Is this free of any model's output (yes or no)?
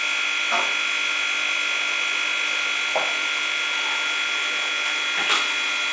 yes